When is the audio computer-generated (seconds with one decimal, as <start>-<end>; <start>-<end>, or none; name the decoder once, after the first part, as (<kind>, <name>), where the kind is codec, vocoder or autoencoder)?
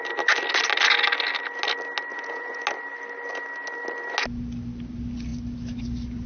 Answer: 2.1-2.6 (vocoder, Vocos)